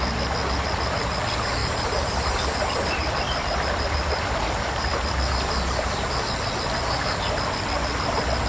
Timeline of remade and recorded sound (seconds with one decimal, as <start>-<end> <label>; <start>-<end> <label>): 0.0-1.6 recorded; 1.6-6.1 remade; 6.1-8.5 recorded